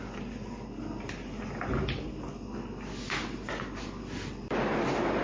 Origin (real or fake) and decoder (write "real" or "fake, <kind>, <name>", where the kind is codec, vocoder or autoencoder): real